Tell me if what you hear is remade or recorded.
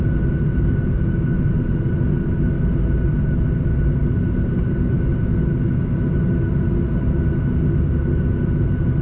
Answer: recorded